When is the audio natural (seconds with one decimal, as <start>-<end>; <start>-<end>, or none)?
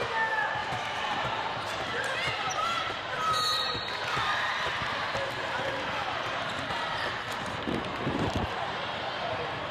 0.0-0.6; 3.9-6.0